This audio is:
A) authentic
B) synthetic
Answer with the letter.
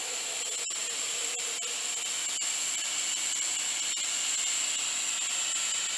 A